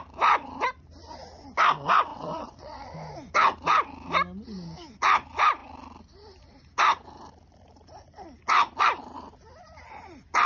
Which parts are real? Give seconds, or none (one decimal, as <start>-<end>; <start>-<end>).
0.0-2.1; 2.9-10.5